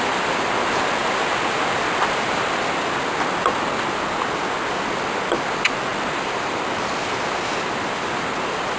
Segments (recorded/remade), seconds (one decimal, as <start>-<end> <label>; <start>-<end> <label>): 0.0-5.9 recorded; 5.9-6.8 remade; 6.8-8.8 recorded